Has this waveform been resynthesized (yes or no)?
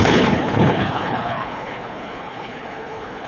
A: yes